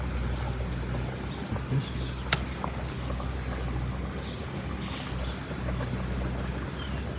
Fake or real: real